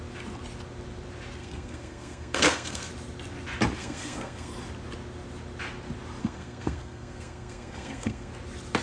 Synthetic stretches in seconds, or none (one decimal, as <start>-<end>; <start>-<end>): 1.4-2.9; 3.8-4.5; 6.2-8.3